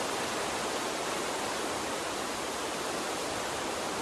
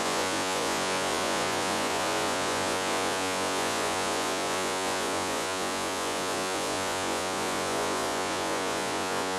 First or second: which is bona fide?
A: first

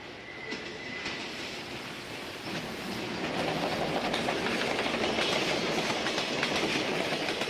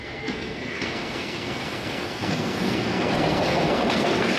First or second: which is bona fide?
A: first